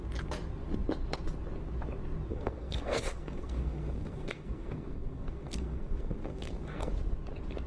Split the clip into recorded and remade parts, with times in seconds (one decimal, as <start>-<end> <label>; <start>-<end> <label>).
0.0-2.3 recorded; 2.3-6.9 remade; 6.9-7.7 recorded